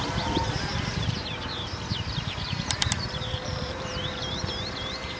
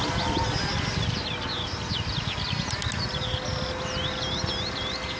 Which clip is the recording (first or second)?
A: second